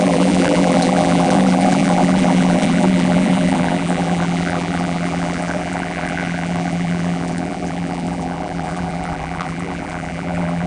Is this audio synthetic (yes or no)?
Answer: yes